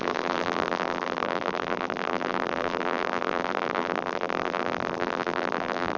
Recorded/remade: remade